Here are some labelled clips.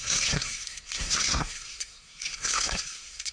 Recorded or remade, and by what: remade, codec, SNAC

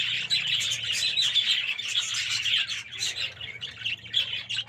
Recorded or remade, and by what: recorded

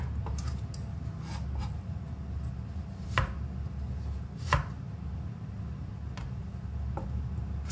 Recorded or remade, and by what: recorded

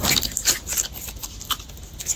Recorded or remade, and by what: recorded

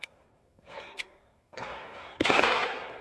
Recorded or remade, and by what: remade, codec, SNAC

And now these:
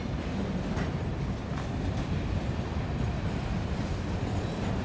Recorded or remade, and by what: recorded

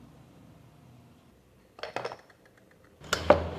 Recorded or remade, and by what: recorded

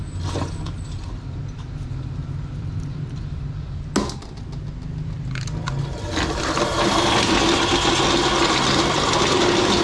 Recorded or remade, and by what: recorded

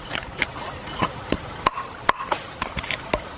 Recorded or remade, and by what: recorded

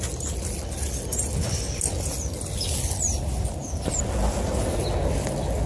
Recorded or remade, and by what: recorded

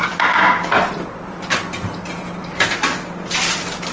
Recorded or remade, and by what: recorded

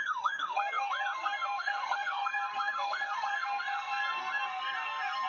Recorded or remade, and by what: remade, codec, SNAC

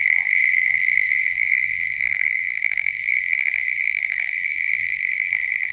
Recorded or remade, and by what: remade, vocoder, BigVGAN v2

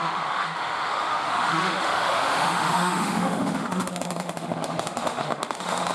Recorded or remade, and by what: remade, autoencoder, DAC-VAE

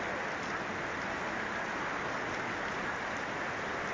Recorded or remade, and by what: recorded